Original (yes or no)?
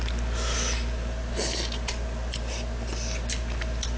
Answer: yes